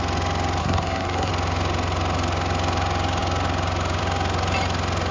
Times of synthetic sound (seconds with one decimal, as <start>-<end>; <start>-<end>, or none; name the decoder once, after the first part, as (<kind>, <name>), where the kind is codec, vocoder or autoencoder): 0.6-1.3 (codec, SNAC)